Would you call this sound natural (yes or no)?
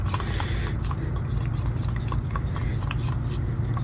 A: yes